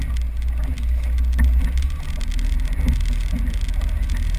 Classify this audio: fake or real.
real